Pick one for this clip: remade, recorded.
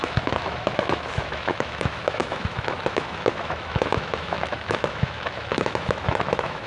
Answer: remade